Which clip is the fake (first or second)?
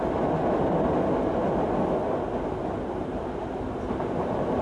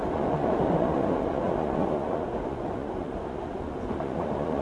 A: second